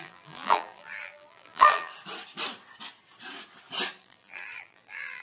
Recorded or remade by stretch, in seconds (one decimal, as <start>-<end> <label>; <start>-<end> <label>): 0.0-1.9 remade; 1.9-4.0 recorded; 4.0-5.2 remade